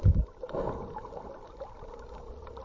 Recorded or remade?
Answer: recorded